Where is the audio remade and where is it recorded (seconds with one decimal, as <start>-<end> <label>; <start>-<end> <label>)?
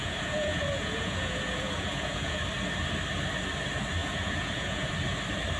0.0-2.4 remade; 2.4-4.0 recorded; 4.0-4.9 remade; 4.9-5.6 recorded